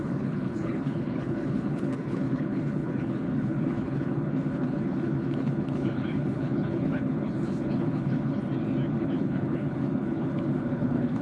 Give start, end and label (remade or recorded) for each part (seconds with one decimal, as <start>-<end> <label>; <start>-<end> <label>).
0.0-8.4 remade; 8.4-9.0 recorded; 9.0-11.2 remade